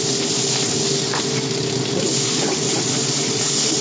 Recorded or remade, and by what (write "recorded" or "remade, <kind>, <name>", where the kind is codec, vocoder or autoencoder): recorded